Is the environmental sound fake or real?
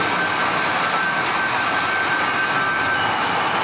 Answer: real